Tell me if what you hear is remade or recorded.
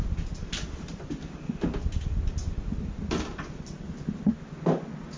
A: recorded